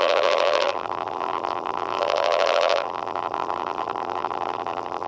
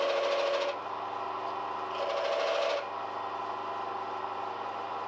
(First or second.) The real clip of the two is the second